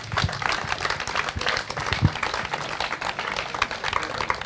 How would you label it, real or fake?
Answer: real